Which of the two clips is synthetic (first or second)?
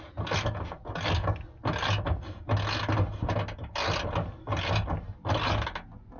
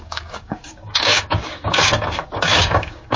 second